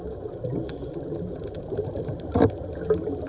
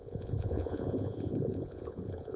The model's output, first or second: second